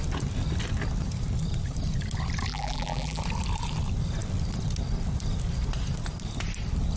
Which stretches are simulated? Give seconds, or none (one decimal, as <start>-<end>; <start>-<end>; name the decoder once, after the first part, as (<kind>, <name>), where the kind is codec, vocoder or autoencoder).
2.5-3.2 (vocoder, BigVGAN v2)

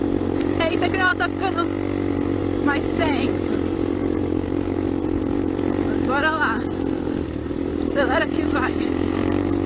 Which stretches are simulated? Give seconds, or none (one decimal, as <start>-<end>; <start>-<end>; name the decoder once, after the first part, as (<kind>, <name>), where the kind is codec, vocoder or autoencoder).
0.0-1.1 (vocoder, BigVGAN v2); 2.1-9.7